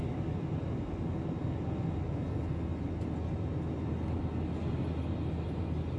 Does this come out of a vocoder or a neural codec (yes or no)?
no